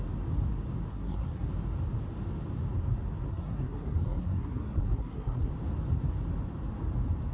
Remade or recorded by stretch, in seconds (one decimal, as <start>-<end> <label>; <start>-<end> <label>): 0.0-0.9 recorded; 0.9-1.5 remade; 1.5-3.3 recorded; 3.3-5.5 remade; 5.5-7.3 recorded